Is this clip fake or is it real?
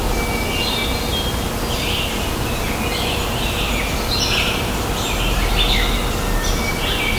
real